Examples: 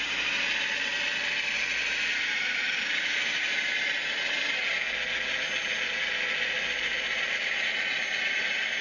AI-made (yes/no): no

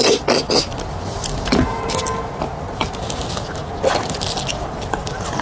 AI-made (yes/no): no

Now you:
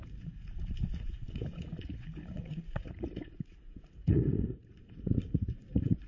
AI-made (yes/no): yes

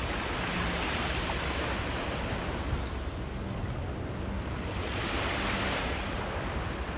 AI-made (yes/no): no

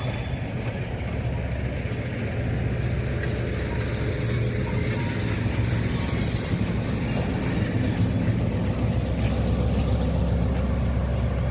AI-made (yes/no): no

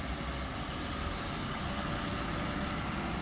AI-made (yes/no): no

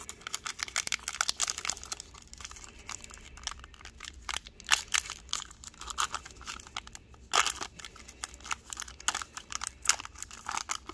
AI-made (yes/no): no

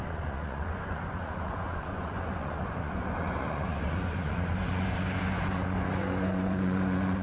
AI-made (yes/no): yes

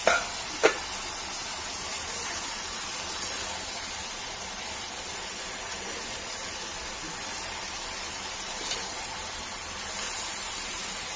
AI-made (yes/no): no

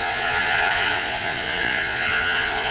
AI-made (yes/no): yes